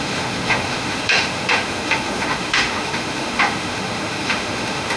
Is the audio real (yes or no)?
no